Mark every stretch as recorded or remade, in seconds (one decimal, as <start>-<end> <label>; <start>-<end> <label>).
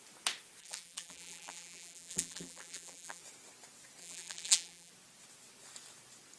0.0-0.6 recorded; 0.6-3.2 remade; 3.2-4.0 recorded; 4.0-4.9 remade; 4.9-6.4 recorded